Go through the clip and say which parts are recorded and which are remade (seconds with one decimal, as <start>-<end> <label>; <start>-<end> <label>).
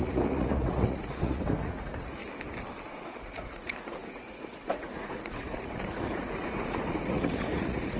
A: 0.0-2.2 remade; 2.2-2.8 recorded; 2.8-8.0 remade